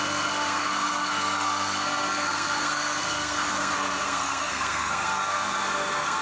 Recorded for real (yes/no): no